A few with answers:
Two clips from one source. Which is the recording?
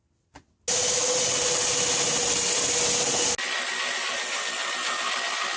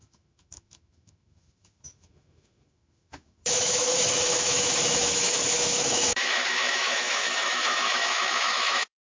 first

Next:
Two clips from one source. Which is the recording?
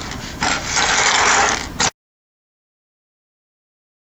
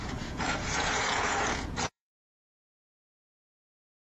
first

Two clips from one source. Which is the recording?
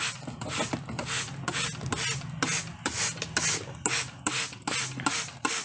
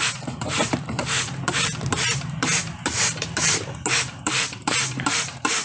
first